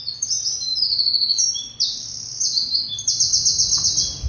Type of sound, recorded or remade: recorded